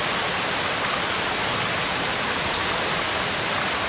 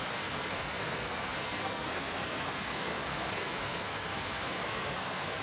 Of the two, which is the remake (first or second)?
second